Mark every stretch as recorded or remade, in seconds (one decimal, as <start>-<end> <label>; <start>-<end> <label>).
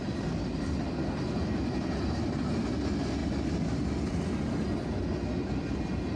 0.0-6.2 recorded